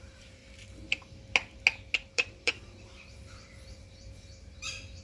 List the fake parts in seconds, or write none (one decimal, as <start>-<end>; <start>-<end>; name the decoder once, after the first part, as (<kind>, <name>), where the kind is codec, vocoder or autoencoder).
0.0-0.4 (vocoder, BigVGAN v2); 2.1-5.0